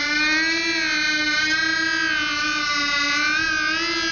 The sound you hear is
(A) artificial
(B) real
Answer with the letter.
B